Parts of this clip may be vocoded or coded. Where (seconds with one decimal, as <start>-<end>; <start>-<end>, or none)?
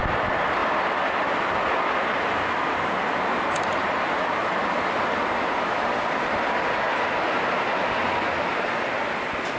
none